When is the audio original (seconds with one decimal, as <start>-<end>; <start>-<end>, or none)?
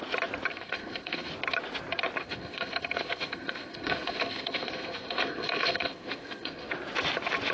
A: 0.0-0.5; 1.3-2.2; 6.7-7.5